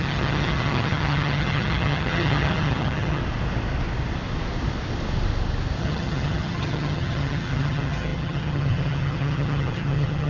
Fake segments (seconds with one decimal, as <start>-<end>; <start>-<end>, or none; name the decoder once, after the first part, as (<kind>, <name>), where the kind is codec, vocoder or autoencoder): 0.0-3.2 (vocoder, HiFi-GAN); 5.8-10.3